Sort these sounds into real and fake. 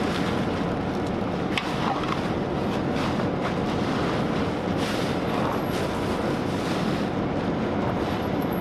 real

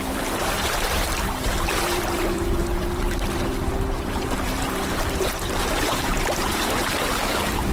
fake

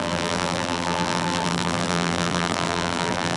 fake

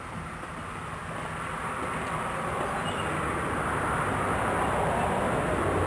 fake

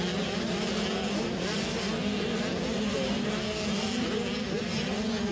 real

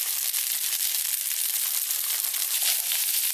fake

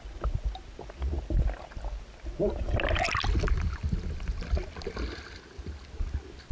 real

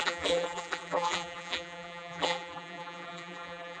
fake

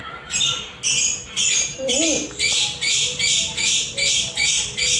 real